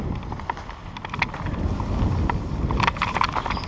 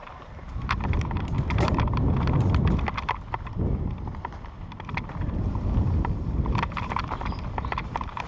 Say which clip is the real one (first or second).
first